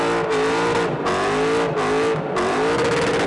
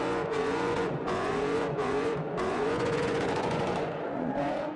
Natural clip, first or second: first